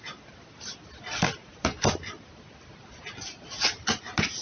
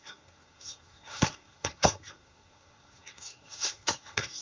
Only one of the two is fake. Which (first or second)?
second